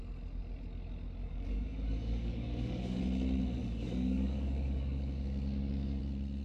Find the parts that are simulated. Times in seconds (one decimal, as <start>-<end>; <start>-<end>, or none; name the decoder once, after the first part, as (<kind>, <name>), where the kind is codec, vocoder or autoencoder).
1.2-3.0 (codec, DAC); 3.6-6.0